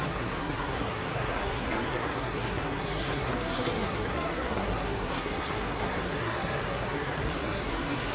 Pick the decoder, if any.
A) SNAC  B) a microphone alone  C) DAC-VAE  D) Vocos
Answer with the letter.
A